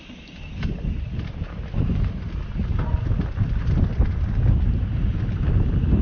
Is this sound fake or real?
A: real